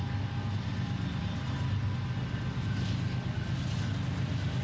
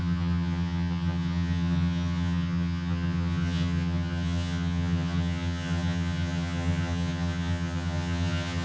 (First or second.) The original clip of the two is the first